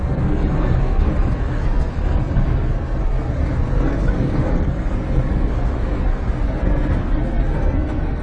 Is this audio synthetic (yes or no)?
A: yes